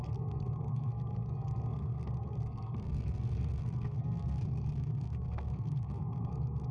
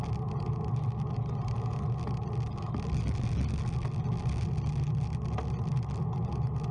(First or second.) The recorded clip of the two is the second